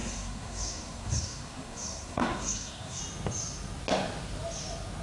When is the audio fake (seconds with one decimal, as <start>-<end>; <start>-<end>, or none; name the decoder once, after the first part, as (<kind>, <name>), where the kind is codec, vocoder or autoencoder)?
0.0-3.0 (codec, SNAC)